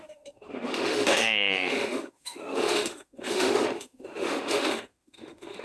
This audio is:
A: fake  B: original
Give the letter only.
A